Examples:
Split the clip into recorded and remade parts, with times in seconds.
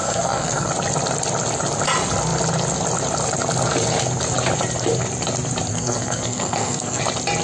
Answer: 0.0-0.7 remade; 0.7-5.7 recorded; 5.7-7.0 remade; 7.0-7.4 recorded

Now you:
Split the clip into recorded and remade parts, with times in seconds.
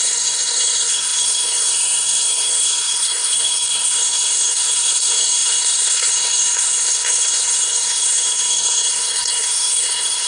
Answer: 0.0-10.3 remade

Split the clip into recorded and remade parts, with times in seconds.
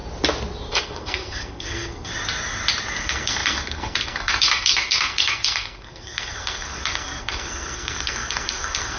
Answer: 0.0-0.7 recorded; 0.7-2.1 remade; 2.1-3.0 recorded; 3.0-9.0 remade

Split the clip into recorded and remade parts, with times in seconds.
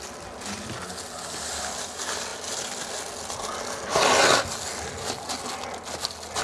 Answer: 0.0-6.4 recorded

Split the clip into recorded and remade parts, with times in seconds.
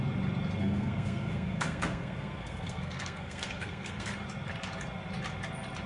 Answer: 0.0-0.6 recorded; 0.6-4.1 remade; 4.1-5.9 recorded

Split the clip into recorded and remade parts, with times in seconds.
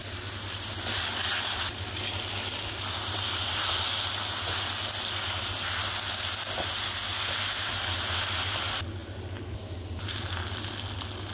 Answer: 0.0-11.3 recorded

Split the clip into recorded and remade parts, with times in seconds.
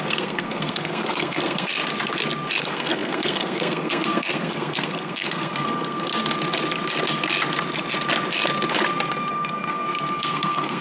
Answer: 0.0-1.7 remade; 1.7-2.6 recorded; 2.6-6.1 remade; 6.1-9.3 recorded; 9.3-10.8 remade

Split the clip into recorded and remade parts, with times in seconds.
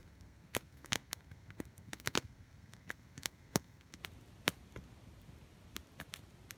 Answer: 0.0-4.0 remade; 4.0-6.6 recorded